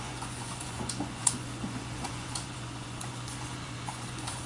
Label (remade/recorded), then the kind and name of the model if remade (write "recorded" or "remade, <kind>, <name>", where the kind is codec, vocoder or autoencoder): remade, vocoder, Vocos